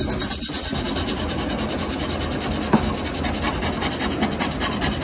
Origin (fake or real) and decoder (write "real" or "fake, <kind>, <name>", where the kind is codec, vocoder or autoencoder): real